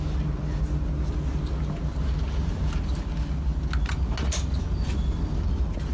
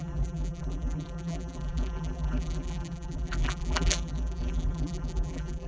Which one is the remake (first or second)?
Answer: second